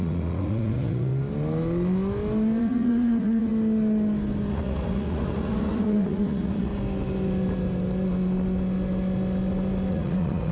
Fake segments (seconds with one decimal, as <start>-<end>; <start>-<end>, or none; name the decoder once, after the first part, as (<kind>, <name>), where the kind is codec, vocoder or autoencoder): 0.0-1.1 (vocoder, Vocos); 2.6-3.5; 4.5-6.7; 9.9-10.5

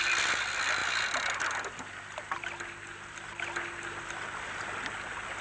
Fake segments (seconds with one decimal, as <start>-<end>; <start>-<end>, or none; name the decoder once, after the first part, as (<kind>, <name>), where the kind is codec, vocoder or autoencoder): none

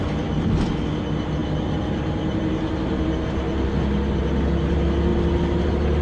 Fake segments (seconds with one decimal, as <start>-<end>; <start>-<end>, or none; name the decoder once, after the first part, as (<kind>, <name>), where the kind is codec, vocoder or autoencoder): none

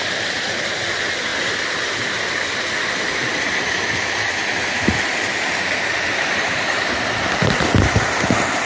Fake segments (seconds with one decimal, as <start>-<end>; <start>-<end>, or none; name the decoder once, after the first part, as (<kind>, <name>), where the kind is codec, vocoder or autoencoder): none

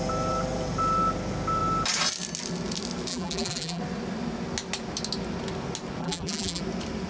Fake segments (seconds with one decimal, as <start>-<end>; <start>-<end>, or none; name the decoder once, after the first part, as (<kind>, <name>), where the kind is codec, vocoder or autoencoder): 3.1-3.8 (vocoder, BigVGAN v2); 6.0-6.6

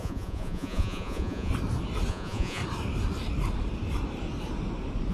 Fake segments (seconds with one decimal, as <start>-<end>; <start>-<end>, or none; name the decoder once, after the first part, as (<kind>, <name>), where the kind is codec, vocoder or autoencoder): 0.0-1.5 (vocoder, Vocos); 2.1-2.6

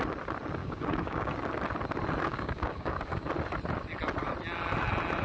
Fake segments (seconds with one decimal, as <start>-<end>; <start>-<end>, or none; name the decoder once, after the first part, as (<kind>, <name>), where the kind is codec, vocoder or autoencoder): 0.6-1.3 (codec, DAC); 2.3-3.3

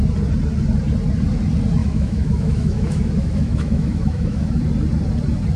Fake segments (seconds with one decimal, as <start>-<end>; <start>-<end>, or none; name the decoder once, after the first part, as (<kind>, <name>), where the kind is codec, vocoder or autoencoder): 1.8-4.6 (autoencoder, DAC-VAE)